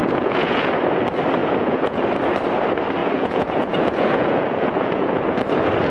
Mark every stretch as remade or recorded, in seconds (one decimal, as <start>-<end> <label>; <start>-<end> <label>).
0.0-0.7 remade; 0.7-1.4 recorded; 1.4-2.0 remade; 2.0-3.0 recorded; 3.0-5.4 remade; 5.4-5.9 recorded